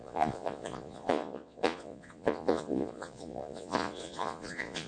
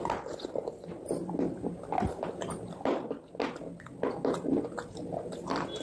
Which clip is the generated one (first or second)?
first